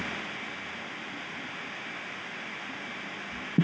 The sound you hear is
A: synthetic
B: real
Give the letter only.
B